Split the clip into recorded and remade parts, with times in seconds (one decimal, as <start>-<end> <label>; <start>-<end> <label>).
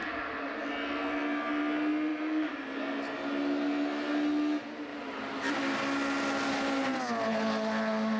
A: 0.0-2.1 recorded; 2.1-2.8 remade; 2.8-4.9 recorded; 4.9-5.5 remade; 5.5-8.2 recorded